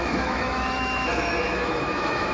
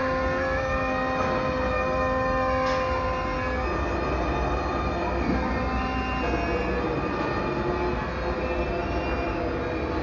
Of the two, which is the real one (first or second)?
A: second